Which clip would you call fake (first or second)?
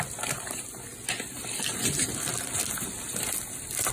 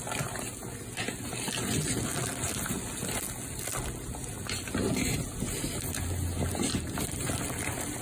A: first